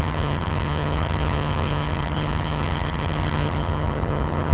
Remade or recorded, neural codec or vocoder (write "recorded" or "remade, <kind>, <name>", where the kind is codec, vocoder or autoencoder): remade, vocoder, HiFi-GAN